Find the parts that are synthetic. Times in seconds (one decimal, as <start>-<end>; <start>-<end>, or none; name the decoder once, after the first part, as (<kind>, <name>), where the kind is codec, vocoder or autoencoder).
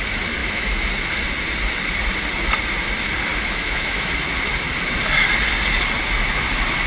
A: 0.4-0.9 (autoencoder, DAC-VAE); 3.3-4.1